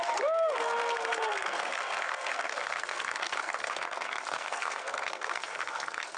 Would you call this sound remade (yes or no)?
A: yes